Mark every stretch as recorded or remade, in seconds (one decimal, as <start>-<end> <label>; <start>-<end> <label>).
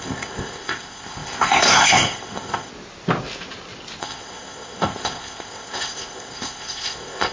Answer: 0.0-2.7 remade; 2.7-4.0 recorded; 4.0-7.3 remade